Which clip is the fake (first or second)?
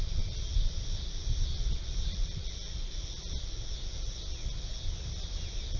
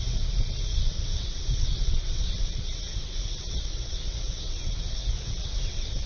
second